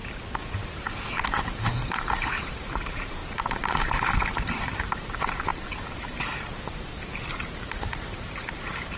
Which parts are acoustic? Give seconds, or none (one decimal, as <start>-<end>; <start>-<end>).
0.0-1.6